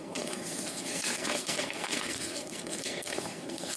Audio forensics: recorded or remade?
remade